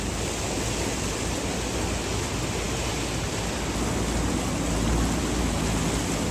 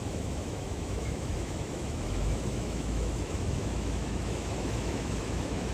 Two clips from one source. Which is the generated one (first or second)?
second